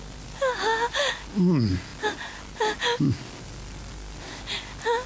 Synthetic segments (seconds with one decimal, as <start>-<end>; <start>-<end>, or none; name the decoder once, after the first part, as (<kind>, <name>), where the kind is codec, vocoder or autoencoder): none